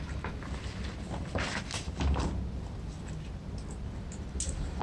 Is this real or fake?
real